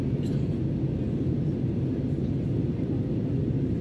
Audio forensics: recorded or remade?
recorded